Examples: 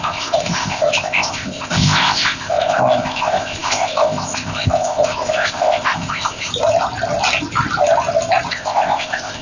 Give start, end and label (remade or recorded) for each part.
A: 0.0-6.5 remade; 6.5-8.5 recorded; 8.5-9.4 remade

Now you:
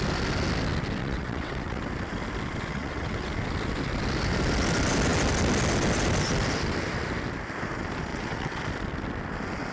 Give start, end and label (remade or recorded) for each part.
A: 0.0-1.0 recorded; 1.0-1.8 remade; 1.8-2.7 recorded; 2.7-3.3 remade; 3.3-8.1 recorded; 8.1-8.6 remade; 8.6-9.7 recorded

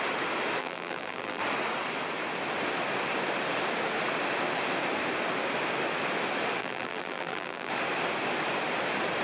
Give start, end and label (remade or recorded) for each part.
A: 0.0-0.6 recorded; 0.6-1.4 remade; 1.4-6.6 recorded; 6.6-7.7 remade; 7.7-9.2 recorded

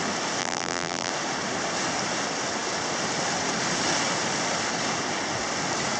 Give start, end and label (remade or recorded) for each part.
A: 0.0-0.4 recorded; 0.4-1.1 remade; 1.1-6.0 recorded

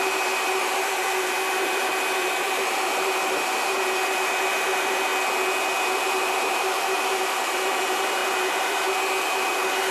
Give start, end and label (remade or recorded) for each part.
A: 0.0-5.1 remade; 5.1-5.8 recorded; 5.8-9.9 remade